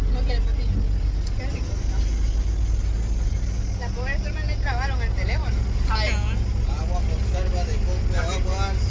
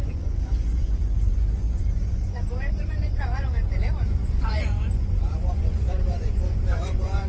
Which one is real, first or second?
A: first